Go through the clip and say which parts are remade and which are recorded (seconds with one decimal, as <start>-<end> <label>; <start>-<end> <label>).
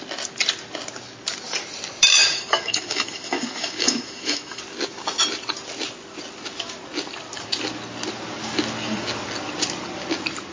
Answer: 0.0-2.2 recorded; 2.2-4.6 remade; 4.6-10.5 recorded